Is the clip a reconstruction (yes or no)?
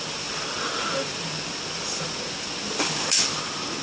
no